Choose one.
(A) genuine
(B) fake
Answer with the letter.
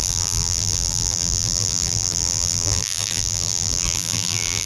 B